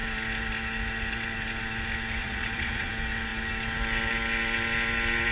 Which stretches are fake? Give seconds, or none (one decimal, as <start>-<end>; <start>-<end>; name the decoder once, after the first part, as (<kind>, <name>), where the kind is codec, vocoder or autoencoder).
2.2-2.9 (vocoder, Vocos)